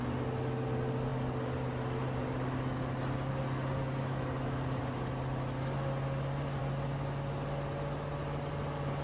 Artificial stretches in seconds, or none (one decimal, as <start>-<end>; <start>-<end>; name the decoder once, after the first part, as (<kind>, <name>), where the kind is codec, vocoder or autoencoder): none